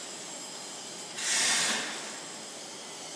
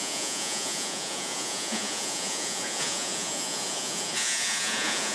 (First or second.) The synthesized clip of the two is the second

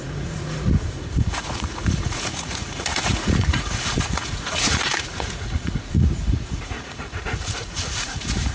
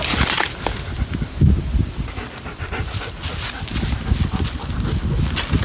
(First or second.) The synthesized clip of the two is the first